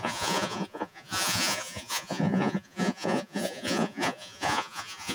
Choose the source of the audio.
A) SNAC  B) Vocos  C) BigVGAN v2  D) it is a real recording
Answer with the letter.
B